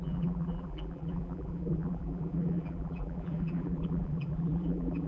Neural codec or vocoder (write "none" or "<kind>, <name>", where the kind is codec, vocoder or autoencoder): vocoder, BigVGAN v2